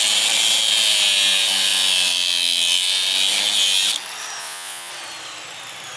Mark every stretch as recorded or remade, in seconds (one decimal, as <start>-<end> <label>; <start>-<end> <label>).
0.0-4.4 recorded; 4.4-4.9 remade; 4.9-6.0 recorded